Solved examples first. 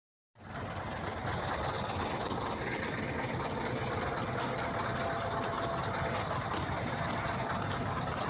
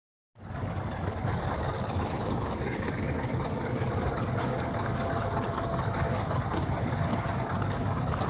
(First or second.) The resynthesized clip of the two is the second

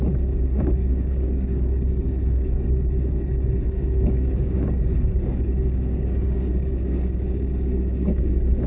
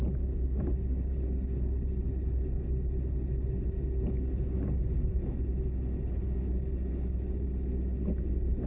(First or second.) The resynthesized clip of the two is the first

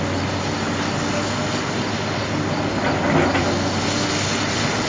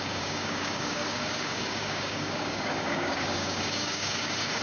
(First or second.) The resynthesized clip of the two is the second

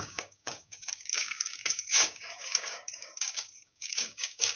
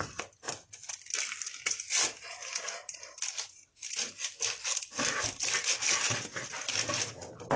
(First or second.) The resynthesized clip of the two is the first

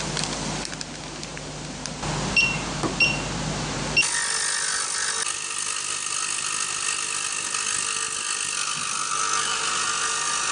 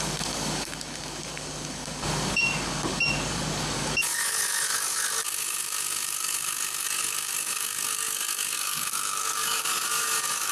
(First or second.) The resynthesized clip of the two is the second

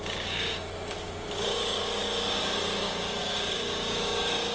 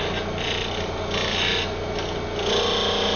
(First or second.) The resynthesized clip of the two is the first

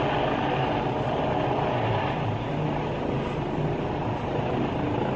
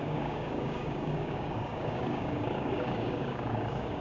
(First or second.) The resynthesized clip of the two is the second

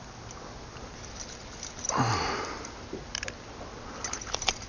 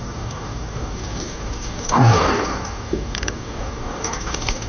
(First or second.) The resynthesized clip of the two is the second